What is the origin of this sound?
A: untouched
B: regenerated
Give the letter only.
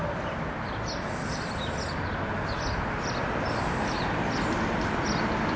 A